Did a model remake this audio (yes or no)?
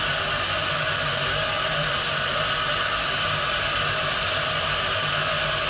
no